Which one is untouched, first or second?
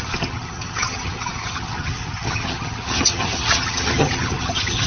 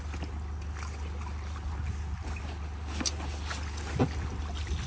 second